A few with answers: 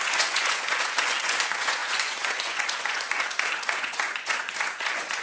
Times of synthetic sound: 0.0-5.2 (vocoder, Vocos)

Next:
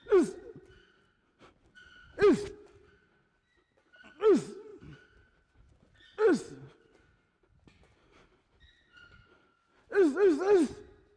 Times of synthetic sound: none

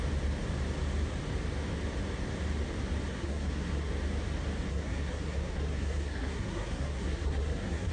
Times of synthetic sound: 3.1-3.9 (codec, SNAC); 4.7-7.9

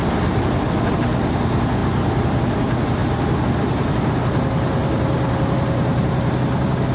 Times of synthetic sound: 1.8-2.4 (vocoder, BigVGAN v2); 3.0-4.0; 4.8-6.3